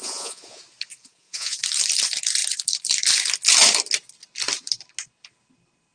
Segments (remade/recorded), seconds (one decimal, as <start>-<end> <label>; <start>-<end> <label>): 0.0-0.6 remade; 0.6-1.0 recorded; 1.0-1.6 remade; 1.6-5.9 recorded